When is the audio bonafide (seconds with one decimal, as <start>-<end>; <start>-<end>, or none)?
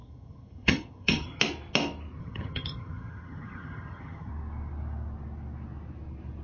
1.4-2.2; 4.3-6.4